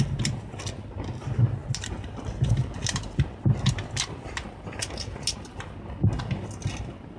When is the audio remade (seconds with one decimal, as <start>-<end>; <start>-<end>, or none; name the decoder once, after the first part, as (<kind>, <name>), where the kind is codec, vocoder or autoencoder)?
none